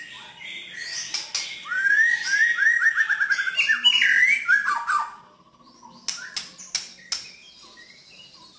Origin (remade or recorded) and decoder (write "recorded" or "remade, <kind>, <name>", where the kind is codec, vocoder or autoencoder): recorded